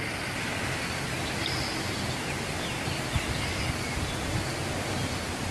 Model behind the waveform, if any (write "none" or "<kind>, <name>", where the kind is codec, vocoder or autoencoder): none